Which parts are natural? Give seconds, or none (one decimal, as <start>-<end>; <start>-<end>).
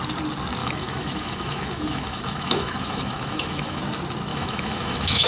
0.0-0.6; 3.8-4.3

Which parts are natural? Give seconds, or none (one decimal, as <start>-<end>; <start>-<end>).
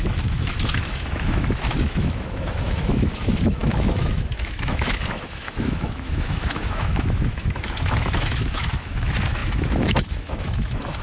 none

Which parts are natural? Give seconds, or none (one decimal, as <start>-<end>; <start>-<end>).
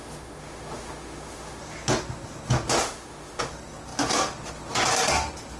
1.6-2.8; 3.5-5.6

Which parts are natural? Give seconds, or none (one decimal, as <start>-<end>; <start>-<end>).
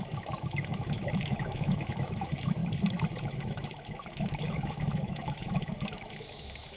2.6-3.2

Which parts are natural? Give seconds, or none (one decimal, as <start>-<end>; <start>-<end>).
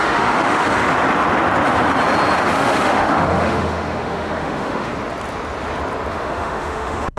0.7-2.5; 4.9-6.1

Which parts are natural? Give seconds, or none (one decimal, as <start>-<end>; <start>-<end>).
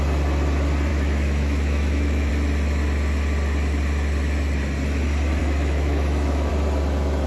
0.0-0.9; 2.3-5.4; 6.5-7.3